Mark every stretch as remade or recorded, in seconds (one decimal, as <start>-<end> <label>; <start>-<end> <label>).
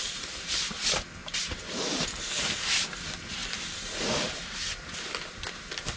0.0-1.2 recorded; 1.2-2.3 remade; 2.3-6.0 recorded